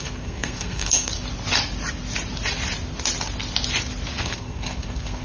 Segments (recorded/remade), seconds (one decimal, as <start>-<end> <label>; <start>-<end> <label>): 0.0-1.1 remade; 1.1-4.2 recorded; 4.2-5.2 remade

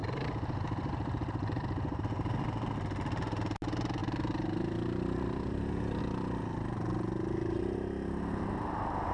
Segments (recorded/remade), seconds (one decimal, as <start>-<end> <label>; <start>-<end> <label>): 0.0-2.0 remade; 2.0-4.0 recorded; 4.0-6.0 remade; 6.0-9.1 recorded